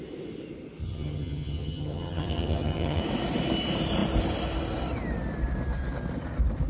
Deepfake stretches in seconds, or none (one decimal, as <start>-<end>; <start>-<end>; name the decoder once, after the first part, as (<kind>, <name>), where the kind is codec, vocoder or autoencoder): 0.8-3.0 (vocoder, HiFi-GAN)